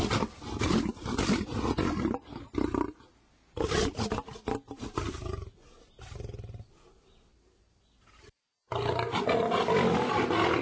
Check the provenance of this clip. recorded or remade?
recorded